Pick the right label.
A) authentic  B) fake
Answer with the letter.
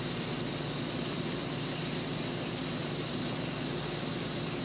A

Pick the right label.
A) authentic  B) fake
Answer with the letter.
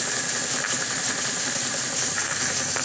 A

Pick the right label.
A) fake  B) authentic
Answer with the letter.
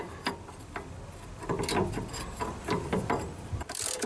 B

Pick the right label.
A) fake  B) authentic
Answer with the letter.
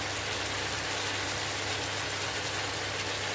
B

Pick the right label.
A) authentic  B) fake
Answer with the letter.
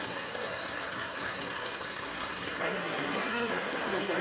B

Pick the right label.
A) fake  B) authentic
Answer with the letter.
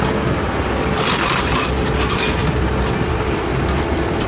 B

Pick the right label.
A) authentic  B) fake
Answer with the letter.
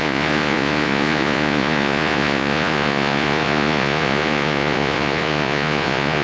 B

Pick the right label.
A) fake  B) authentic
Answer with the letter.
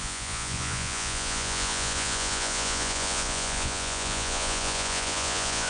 A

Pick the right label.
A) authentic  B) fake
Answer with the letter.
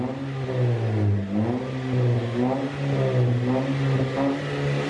A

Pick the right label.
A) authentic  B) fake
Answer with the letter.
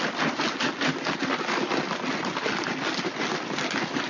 A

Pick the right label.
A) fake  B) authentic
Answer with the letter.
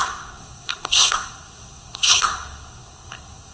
A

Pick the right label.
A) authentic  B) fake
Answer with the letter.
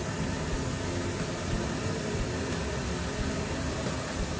A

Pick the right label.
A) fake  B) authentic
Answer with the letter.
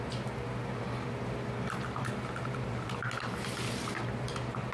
B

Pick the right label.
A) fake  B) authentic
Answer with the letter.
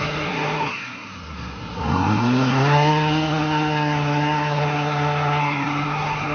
A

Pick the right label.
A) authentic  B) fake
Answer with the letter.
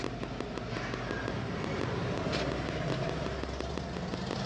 A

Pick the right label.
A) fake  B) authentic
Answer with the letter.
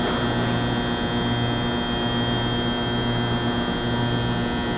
B